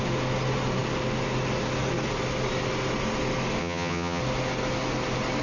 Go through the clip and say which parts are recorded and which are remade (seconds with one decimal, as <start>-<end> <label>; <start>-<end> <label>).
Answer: 0.0-3.6 recorded; 3.6-4.2 remade; 4.2-5.4 recorded